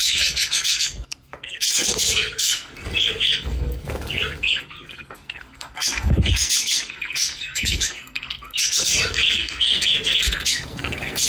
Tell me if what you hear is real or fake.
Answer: fake